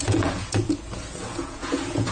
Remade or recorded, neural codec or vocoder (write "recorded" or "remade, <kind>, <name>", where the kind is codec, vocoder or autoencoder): remade, vocoder, Vocos